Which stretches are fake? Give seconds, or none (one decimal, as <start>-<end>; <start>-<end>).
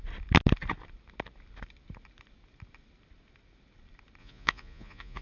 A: 4.2-5.2